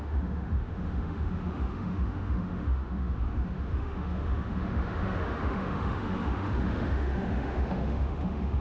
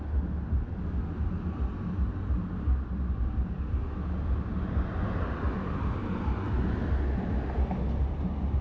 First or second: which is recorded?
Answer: second